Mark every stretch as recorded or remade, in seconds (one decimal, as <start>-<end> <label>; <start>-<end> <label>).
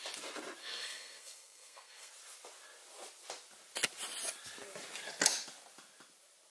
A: 0.0-0.6 recorded; 0.6-2.1 remade; 2.1-6.5 recorded